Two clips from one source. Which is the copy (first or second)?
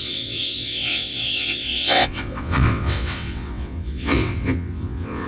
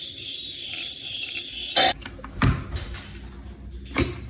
first